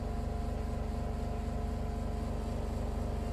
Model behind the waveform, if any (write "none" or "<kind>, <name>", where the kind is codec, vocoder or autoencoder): none